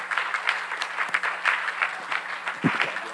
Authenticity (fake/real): real